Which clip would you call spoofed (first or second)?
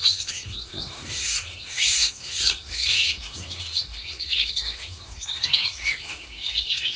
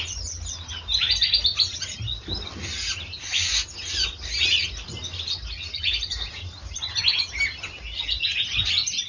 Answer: first